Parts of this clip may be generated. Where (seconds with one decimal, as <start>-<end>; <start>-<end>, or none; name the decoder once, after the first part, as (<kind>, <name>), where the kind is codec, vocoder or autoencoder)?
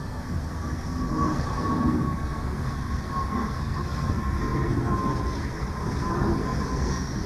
0.0-7.3 (codec, SNAC)